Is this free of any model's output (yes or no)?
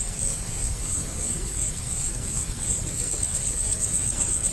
no